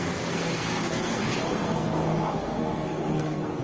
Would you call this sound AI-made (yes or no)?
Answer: yes